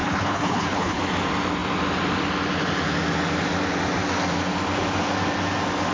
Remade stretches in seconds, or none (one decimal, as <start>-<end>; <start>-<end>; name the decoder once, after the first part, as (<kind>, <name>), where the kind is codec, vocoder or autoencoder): 0.0-1.0 (codec, HILCodec)